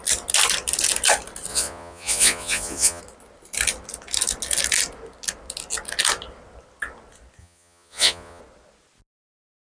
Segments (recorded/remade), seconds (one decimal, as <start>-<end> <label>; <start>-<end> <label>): 0.0-1.5 recorded; 1.5-3.0 remade; 3.0-7.4 recorded; 7.4-8.4 remade; 8.4-9.7 recorded